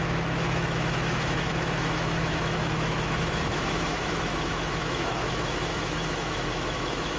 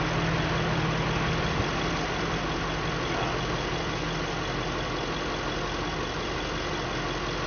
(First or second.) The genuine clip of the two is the second